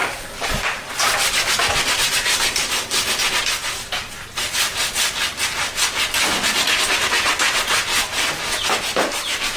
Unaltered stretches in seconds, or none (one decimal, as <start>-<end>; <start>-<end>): 3.2-7.9; 9.0-9.6